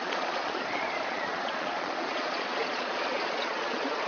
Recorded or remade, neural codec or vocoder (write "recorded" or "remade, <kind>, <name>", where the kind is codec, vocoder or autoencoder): remade, vocoder, Vocos